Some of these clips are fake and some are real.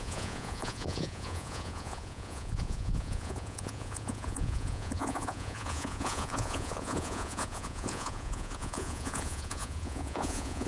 fake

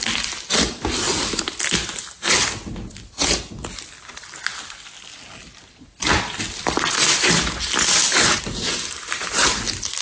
real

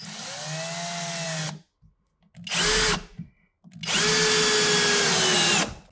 real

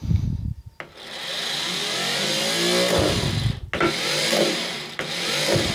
real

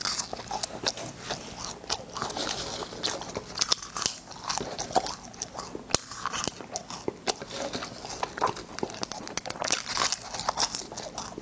real